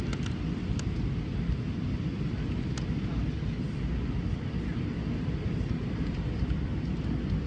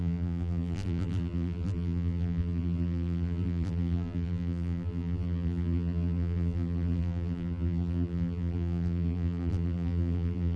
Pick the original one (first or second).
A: first